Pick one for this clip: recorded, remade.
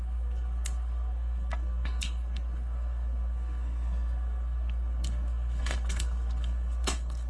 remade